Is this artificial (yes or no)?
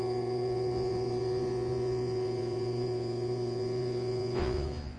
yes